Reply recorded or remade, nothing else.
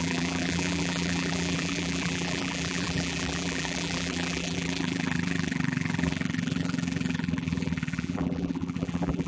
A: remade